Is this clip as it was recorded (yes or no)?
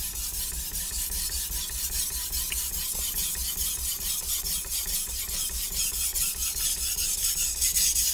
no